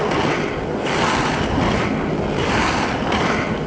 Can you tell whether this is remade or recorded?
recorded